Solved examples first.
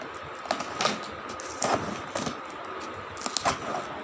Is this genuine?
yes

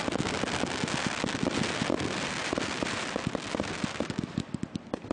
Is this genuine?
yes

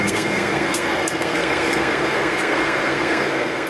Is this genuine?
no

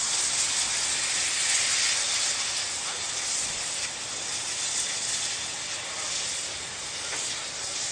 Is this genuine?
yes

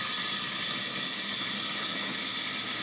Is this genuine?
yes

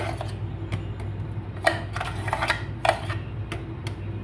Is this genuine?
yes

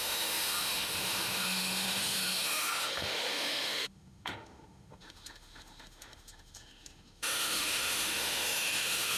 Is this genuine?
no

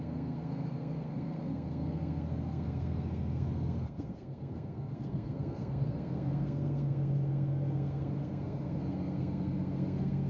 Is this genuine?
no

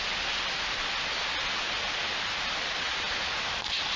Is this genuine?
yes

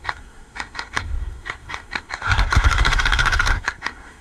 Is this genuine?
no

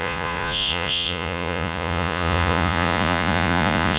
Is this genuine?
no